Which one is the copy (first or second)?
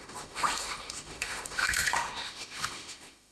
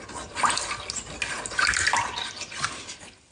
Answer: first